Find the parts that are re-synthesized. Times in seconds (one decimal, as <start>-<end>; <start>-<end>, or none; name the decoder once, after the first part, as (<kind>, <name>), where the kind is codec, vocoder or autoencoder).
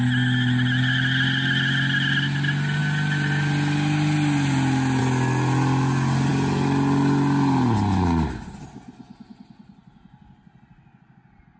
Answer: none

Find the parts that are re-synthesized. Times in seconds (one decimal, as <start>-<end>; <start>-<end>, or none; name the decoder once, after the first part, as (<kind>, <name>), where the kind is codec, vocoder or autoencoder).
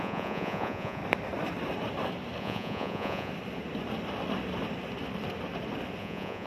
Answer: 0.0-1.0 (vocoder, Vocos); 2.4-3.3; 6.0-6.5